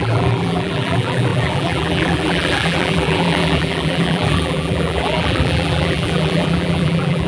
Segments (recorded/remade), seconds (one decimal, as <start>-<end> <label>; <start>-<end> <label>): 0.0-7.3 remade